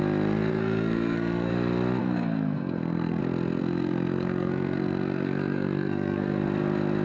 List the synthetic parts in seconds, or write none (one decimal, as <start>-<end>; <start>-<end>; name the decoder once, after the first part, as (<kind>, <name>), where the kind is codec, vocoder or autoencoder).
0.5-1.5 (codec, SNAC); 2.0-3.2; 3.6-6.4